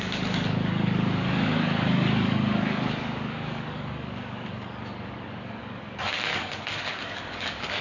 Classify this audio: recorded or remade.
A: remade